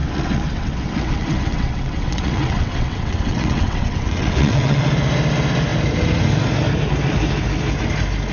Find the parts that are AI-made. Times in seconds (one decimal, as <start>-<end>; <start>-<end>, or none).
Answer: 0.0-4.8